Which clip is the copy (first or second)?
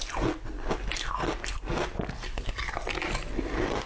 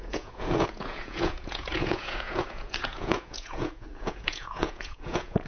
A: second